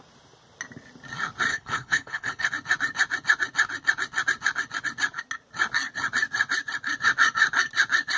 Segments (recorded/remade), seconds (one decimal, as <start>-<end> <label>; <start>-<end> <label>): 0.0-1.5 recorded; 1.5-2.5 remade; 2.5-8.2 recorded